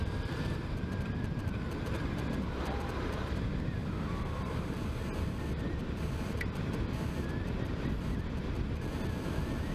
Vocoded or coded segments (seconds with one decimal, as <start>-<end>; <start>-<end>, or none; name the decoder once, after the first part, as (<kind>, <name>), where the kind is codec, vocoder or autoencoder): 0.0-3.8 (vocoder, BigVGAN v2); 4.4-9.7